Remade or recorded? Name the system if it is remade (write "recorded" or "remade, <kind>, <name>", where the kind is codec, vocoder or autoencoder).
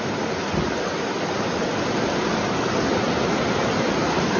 recorded